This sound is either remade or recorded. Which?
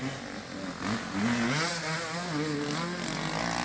recorded